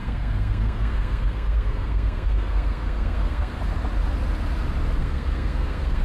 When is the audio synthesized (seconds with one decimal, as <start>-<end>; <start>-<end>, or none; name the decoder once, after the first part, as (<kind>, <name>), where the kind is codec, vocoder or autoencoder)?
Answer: 0.0-3.6 (codec, SNAC); 5.0-6.0